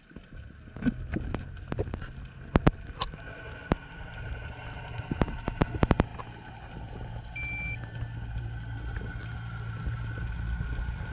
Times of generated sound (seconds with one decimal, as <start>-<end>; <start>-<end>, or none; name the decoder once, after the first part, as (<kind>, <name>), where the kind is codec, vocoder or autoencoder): none